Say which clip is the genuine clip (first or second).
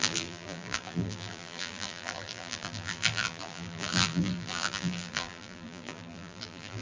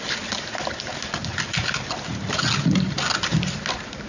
second